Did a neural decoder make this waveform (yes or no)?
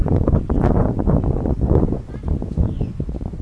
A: yes